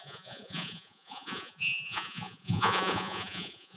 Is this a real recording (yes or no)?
no